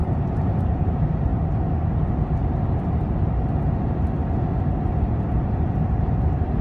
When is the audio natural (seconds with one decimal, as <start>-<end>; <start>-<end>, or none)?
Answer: 1.3-3.8; 4.2-6.0